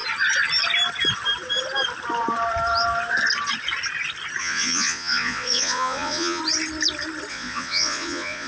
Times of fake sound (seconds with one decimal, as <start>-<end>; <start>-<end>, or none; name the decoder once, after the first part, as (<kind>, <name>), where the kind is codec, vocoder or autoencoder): 4.4-6.4 (vocoder, Vocos); 7.3-8.5